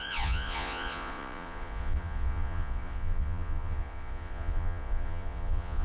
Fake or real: fake